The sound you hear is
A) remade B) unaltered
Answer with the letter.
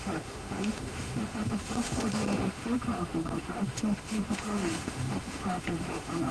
A